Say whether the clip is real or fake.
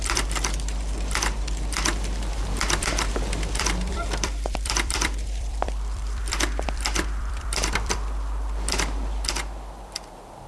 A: fake